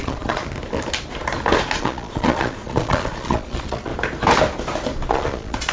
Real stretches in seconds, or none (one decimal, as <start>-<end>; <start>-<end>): 0.4-1.8; 3.9-5.1

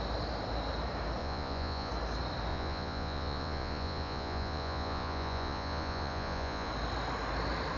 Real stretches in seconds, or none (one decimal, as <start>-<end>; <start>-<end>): 0.0-1.2; 1.9-2.5; 6.7-7.8

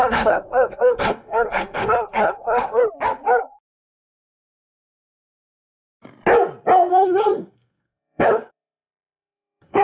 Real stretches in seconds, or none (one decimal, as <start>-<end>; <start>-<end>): 2.8-6.9

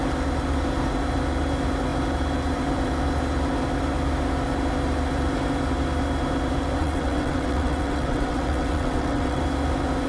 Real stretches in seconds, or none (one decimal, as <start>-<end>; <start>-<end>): 0.0-6.8; 9.4-10.1

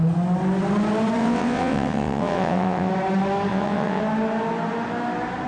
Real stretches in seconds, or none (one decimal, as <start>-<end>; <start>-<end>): 0.0-1.2; 2.9-3.5; 4.0-5.5

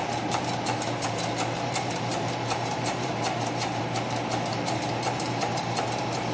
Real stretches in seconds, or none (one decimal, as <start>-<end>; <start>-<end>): 3.8-4.5; 5.6-6.3

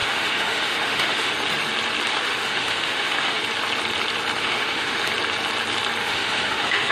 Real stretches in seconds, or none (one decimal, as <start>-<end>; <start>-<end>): 1.3-2.1; 3.4-4.4; 5.1-6.0

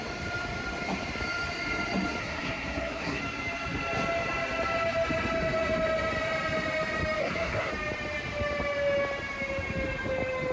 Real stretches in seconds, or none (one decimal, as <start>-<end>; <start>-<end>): 0.0-2.2; 3.2-7.2; 7.7-10.5